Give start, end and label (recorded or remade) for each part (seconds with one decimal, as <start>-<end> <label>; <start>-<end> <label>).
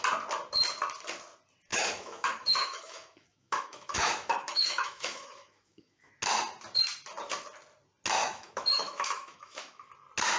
0.0-1.7 recorded; 1.7-6.1 remade; 6.1-8.2 recorded; 8.2-9.9 remade; 9.9-10.4 recorded